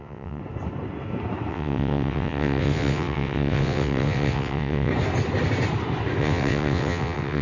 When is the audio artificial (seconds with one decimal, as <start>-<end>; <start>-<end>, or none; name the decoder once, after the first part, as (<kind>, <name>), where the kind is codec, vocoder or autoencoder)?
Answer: 0.0-0.4 (vocoder, WaveNeXt); 1.5-4.9; 6.2-7.4